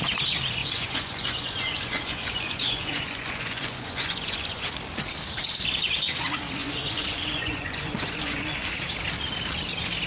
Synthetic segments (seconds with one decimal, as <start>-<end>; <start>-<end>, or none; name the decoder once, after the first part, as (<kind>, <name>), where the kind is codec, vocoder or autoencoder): 0.6-4.7 (vocoder, Vocos); 6.6-8.7